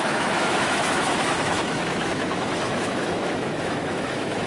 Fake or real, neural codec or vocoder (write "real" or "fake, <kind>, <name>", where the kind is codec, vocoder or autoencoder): fake, autoencoder, DAC-VAE